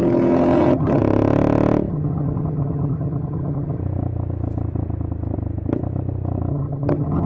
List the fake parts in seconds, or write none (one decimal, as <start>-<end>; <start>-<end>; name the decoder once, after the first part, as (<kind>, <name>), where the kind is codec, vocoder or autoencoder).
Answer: 0.0-1.0 (vocoder, HiFi-GAN); 1.9-3.8; 6.5-7.3